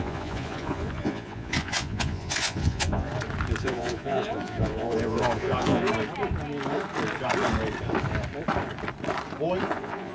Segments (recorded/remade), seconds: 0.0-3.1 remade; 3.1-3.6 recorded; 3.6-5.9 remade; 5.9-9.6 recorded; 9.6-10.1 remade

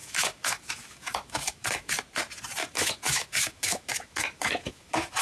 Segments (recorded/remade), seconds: 0.0-1.9 remade; 1.9-2.6 recorded; 2.6-5.2 remade